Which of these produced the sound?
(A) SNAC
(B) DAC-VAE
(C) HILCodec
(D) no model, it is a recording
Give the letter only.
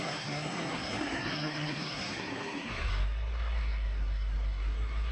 A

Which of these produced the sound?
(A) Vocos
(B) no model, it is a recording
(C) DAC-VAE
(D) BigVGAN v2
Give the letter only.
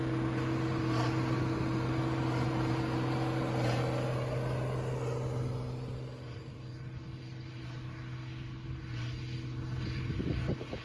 B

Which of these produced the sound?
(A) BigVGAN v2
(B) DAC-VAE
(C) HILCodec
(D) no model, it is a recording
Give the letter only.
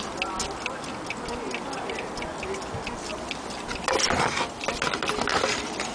D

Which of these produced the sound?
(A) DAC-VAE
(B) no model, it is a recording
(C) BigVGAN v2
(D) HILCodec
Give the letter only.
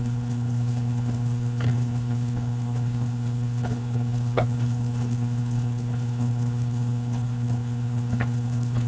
D